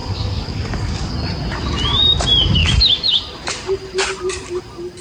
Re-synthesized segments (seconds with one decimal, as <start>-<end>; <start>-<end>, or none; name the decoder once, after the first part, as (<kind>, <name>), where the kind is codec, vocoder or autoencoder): 0.0-1.1 (codec, DAC); 2.6-3.2